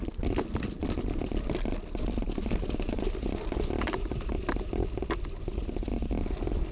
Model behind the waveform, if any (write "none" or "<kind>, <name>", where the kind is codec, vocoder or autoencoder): none